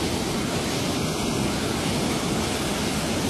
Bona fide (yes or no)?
yes